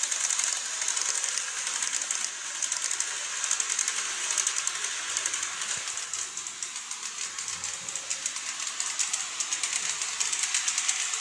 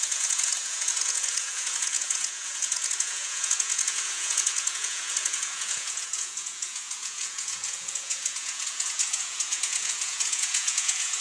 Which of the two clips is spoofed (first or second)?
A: second